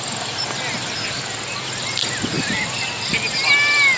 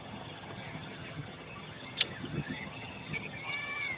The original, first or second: first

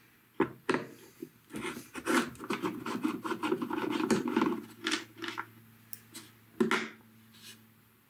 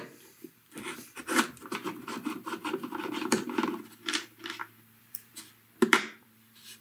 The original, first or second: first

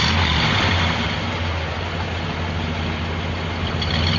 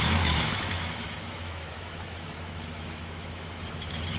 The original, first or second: first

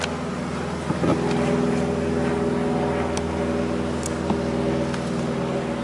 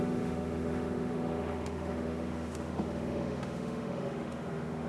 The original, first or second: first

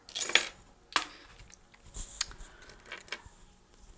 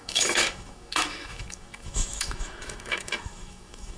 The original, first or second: first